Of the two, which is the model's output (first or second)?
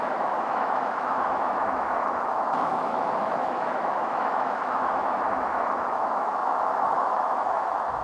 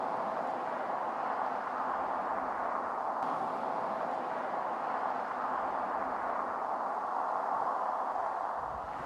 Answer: first